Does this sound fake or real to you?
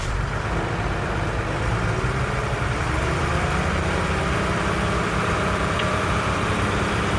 fake